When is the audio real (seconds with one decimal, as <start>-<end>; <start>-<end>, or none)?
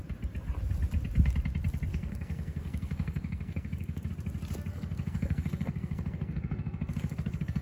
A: 0.0-1.9; 4.1-4.7